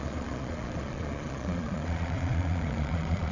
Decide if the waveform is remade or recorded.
remade